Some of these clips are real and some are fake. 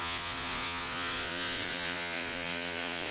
fake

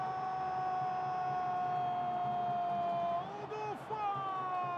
real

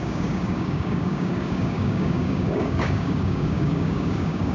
fake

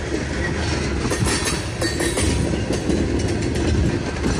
real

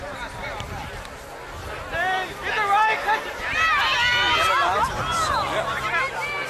real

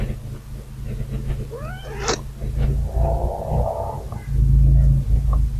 real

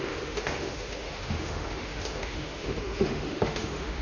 fake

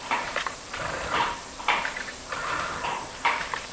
fake